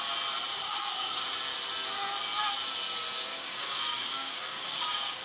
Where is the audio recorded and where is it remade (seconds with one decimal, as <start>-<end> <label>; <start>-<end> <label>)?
0.0-0.5 recorded; 0.5-1.2 remade; 1.2-3.3 recorded; 3.3-5.2 remade